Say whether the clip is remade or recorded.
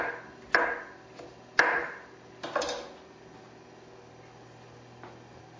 recorded